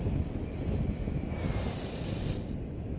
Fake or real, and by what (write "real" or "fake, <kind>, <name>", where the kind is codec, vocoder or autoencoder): real